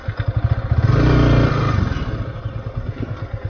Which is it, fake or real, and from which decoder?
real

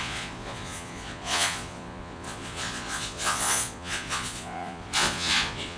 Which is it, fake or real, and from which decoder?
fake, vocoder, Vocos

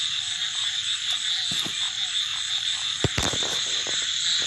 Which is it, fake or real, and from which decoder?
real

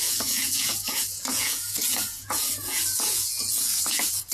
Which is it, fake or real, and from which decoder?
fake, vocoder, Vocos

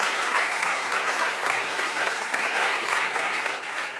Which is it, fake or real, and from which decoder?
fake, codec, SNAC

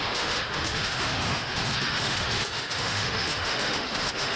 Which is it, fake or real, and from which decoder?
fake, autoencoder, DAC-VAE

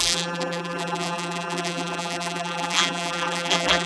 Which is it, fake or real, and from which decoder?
fake, vocoder, BigVGAN v2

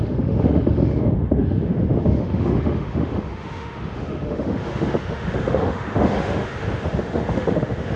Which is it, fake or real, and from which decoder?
fake, autoencoder, DAC-VAE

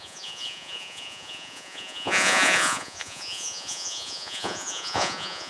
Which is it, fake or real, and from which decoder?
fake, vocoder, Vocos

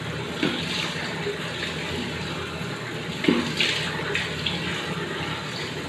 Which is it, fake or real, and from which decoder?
real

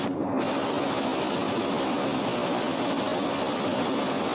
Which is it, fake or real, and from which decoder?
real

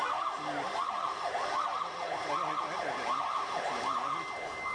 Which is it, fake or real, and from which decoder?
real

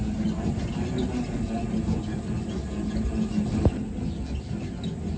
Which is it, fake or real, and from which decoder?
real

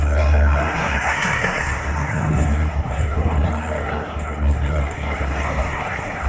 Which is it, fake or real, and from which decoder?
fake, codec, SNAC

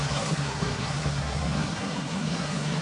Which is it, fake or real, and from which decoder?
fake, codec, SNAC